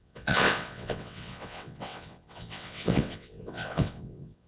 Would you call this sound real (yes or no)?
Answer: no